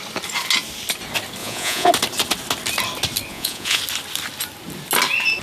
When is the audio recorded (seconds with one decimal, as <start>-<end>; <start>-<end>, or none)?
0.0-1.4; 1.9-3.3; 3.8-5.4